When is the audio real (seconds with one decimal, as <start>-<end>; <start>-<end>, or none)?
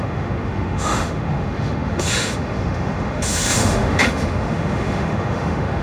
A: none